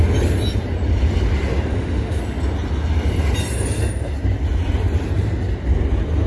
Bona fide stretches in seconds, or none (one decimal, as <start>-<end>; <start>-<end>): 0.0-1.7; 2.2-6.3